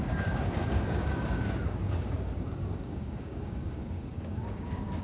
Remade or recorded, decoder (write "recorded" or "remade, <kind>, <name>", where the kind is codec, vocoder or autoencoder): remade, codec, DAC